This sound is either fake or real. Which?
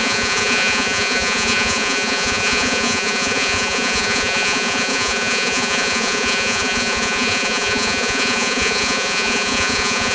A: fake